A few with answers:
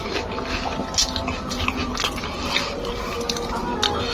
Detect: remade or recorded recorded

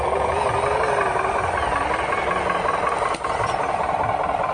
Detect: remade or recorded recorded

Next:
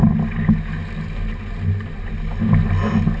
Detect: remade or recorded recorded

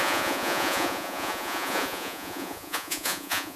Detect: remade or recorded remade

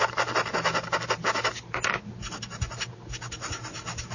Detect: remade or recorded recorded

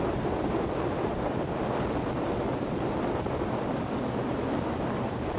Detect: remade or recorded recorded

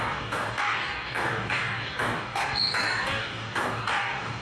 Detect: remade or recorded remade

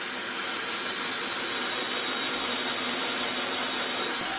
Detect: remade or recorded recorded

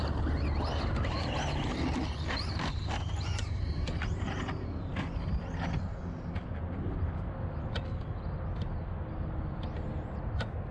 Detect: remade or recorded recorded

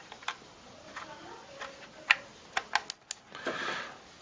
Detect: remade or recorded recorded